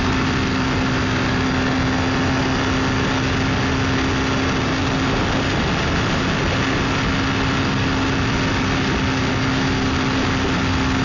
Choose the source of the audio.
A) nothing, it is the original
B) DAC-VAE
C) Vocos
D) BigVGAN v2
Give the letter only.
A